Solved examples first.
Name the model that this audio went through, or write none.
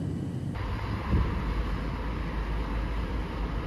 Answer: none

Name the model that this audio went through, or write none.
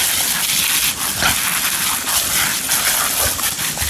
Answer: none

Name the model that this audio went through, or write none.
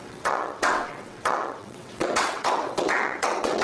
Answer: vocoder, WaveNeXt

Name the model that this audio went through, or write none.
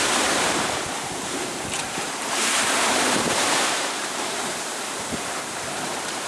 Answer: vocoder, BigVGAN v2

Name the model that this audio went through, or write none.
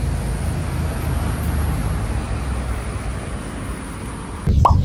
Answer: none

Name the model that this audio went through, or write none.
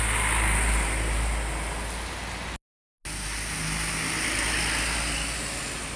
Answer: none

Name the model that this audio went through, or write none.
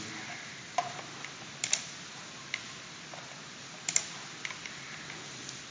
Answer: none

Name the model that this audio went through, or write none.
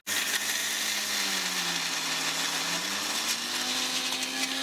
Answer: none